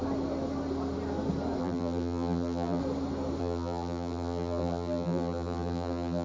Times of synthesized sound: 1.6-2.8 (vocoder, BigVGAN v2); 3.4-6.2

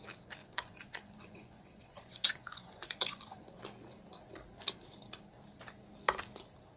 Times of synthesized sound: 0.4-3.6 (vocoder, Vocos)

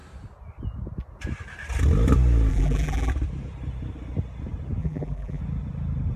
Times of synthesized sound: 2.5-3.1 (vocoder, BigVGAN v2); 4.8-5.4

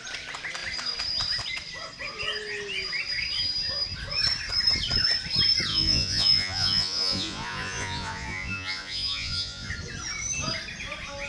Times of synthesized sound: 5.7-9.7 (vocoder, Vocos)

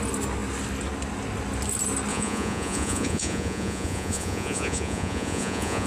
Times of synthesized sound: 2.1-5.9 (vocoder, Vocos)

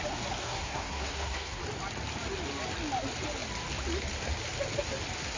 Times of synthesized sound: 0.4-1.6 (codec, SNAC)

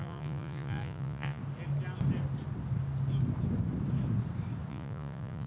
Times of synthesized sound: 0.0-1.4 (vocoder, Vocos); 4.7-5.5

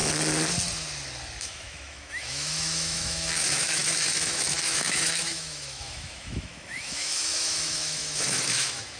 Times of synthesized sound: 1.4-9.0 (autoencoder, DAC-VAE)